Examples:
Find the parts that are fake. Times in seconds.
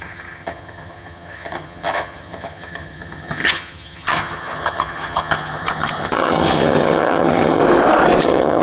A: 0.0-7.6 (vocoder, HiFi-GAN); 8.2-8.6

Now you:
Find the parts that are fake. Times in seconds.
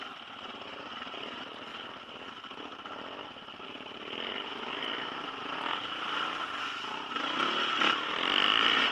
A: none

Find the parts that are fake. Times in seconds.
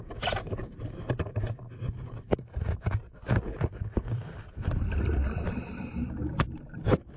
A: 0.0-4.3 (vocoder, BigVGAN v2)